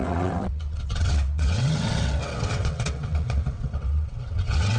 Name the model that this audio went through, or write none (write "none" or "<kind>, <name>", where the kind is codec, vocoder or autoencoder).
vocoder, WaveNeXt